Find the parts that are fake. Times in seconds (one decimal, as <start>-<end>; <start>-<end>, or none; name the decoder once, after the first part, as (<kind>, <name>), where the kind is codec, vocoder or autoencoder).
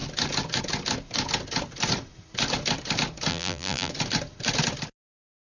3.3-3.9 (vocoder, BigVGAN v2)